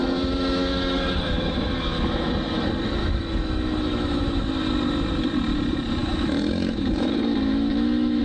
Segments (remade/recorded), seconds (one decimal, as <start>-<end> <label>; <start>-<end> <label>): 0.0-2.3 remade; 2.3-3.0 recorded; 3.0-4.4 remade; 4.4-6.0 recorded; 6.0-8.2 remade